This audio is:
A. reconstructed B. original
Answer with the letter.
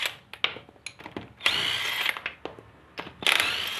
B